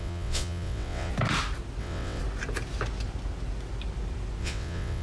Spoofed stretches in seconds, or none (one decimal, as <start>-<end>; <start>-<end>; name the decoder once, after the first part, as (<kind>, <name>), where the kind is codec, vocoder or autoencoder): 0.0-1.1 (vocoder, WaveNeXt); 1.8-2.2; 4.4-5.0